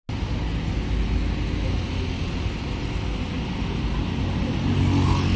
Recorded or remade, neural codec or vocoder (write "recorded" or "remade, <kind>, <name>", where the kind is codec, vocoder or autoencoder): recorded